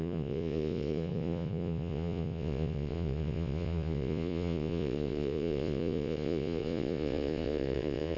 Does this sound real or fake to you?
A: fake